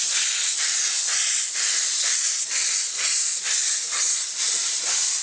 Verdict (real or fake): real